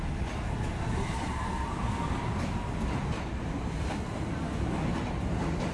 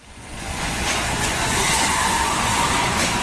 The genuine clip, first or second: first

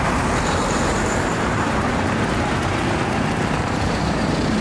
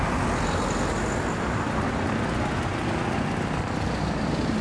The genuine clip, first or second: second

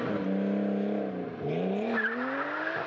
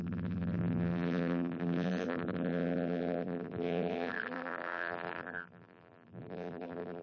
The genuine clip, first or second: first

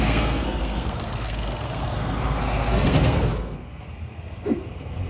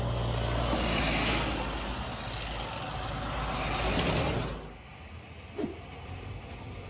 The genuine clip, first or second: second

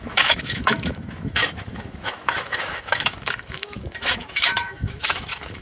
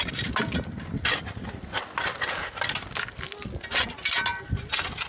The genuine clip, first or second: second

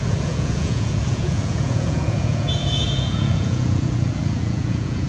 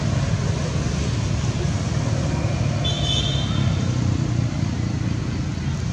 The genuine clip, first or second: second